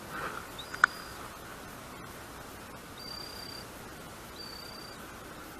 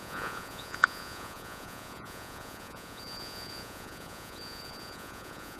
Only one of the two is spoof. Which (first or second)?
second